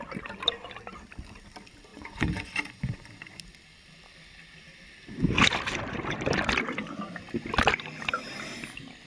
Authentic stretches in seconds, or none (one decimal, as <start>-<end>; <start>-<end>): 0.0-1.9; 3.4-9.1